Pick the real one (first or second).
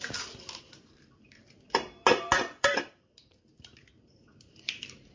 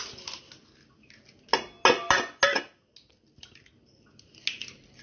second